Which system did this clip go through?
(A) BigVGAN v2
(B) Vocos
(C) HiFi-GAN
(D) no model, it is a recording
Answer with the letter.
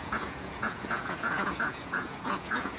B